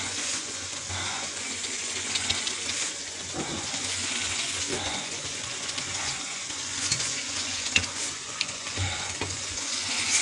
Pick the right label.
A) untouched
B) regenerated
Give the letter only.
B